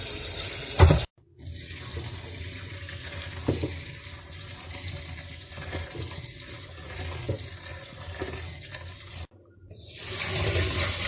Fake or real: real